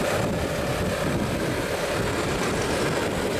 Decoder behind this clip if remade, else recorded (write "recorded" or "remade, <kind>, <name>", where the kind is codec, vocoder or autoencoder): remade, vocoder, BigVGAN v2